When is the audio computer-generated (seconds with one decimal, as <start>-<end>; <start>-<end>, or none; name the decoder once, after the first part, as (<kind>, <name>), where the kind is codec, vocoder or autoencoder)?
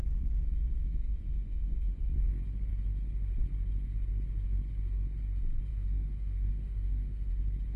0.0-2.0 (autoencoder, DAC-VAE); 5.7-7.3